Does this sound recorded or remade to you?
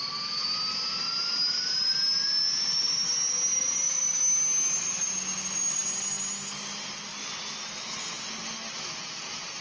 recorded